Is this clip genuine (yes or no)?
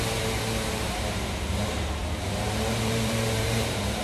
no